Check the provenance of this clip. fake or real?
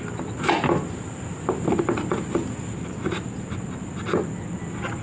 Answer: real